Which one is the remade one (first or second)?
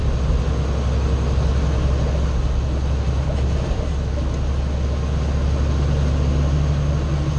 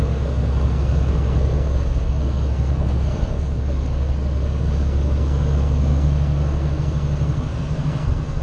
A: second